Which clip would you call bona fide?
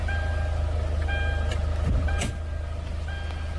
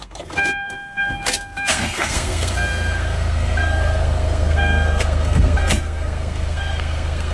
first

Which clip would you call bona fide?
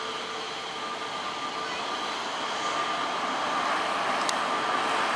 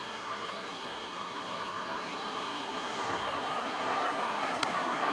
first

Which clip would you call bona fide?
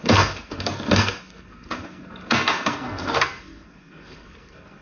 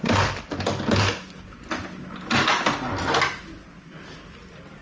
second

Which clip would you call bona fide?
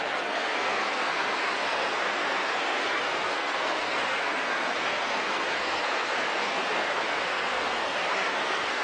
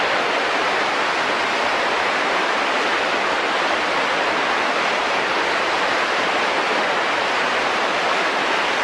second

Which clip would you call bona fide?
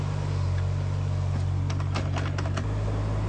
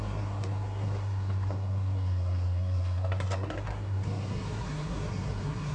first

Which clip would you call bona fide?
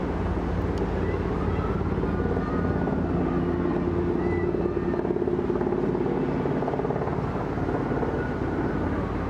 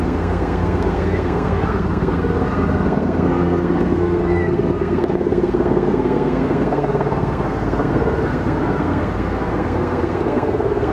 first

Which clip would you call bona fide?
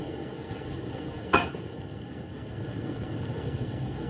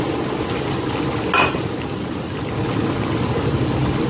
second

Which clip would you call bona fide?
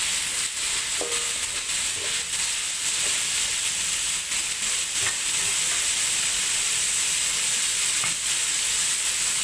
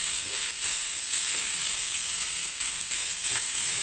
first